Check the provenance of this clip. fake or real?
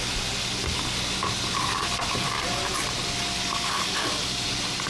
real